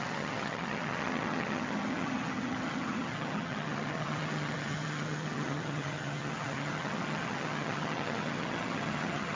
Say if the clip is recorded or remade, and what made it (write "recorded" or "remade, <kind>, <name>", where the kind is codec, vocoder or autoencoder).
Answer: remade, vocoder, HiFi-GAN